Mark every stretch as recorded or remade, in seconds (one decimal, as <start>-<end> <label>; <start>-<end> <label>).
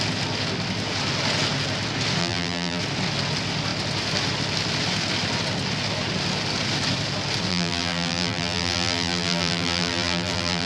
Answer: 0.0-2.2 recorded; 2.2-2.8 remade; 2.8-7.5 recorded; 7.5-10.7 remade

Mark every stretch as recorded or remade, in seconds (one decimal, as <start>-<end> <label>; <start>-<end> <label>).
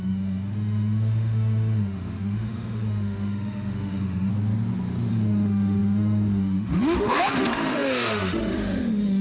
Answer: 0.0-4.3 remade; 4.3-5.1 recorded; 5.1-9.2 remade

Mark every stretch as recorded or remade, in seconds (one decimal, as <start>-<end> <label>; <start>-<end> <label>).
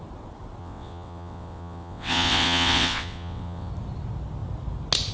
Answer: 0.0-0.6 recorded; 0.6-3.7 remade; 3.7-5.1 recorded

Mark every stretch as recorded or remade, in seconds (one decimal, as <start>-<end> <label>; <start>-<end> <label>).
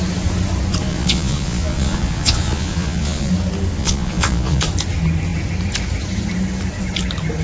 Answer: 0.0-0.9 recorded; 0.9-3.3 remade; 3.3-3.8 recorded; 3.8-4.6 remade; 4.6-7.4 recorded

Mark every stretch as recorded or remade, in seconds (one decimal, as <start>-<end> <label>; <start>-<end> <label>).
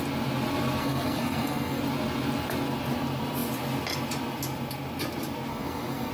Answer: 0.0-0.8 recorded; 0.8-1.8 remade; 1.8-5.5 recorded; 5.5-6.1 remade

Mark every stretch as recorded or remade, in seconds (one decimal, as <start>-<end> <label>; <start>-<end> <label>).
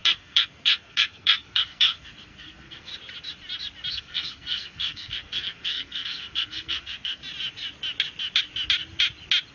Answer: 0.0-2.9 remade; 2.9-3.9 recorded; 3.9-7.2 remade; 7.2-9.5 recorded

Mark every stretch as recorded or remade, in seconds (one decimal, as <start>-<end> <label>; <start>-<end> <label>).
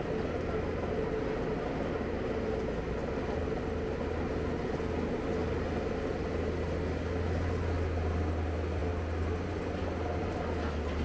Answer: 0.0-11.0 recorded